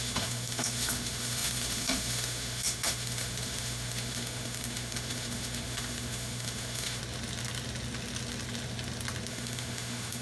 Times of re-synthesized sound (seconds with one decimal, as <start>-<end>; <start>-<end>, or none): 0.0-7.0; 9.3-10.2